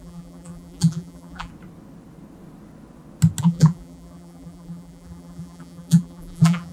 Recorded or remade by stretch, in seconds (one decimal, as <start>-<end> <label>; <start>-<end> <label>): 0.0-1.5 remade; 1.5-3.4 recorded; 3.4-6.7 remade